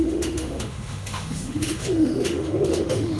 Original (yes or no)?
no